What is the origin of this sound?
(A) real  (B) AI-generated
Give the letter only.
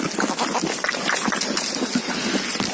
A